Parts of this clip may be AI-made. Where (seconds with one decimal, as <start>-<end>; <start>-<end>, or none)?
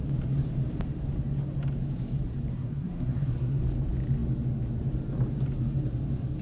2.5-3.6